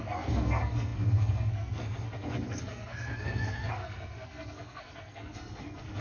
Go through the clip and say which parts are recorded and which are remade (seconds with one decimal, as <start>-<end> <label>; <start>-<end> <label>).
0.0-6.0 remade